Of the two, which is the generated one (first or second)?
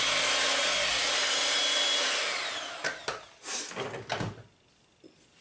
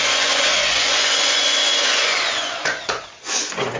second